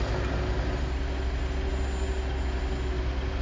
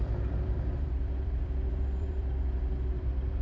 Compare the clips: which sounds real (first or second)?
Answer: first